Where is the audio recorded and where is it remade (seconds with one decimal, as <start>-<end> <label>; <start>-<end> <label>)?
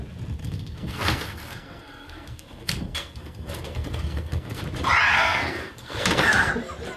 0.0-0.4 recorded; 0.4-4.6 remade; 4.6-5.1 recorded; 5.1-6.5 remade; 6.5-7.0 recorded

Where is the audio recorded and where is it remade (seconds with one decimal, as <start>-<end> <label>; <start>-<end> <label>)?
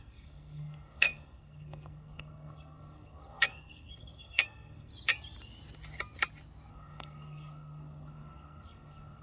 0.0-4.9 remade; 4.9-6.7 recorded; 6.7-9.2 remade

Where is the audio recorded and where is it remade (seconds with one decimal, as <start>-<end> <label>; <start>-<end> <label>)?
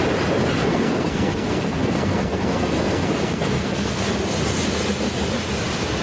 0.0-0.6 recorded; 0.6-4.0 remade; 4.0-6.0 recorded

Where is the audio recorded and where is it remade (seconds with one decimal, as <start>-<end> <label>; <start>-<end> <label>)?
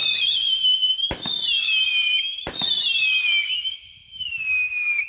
0.0-5.1 recorded